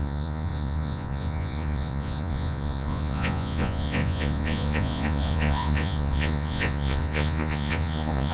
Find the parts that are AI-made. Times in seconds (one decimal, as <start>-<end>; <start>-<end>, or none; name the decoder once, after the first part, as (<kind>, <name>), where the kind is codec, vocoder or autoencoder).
0.0-8.3 (vocoder, Vocos)